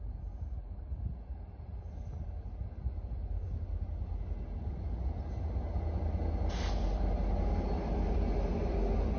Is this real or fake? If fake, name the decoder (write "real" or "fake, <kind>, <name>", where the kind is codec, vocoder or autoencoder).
real